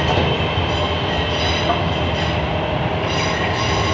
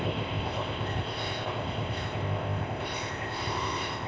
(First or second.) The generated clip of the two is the second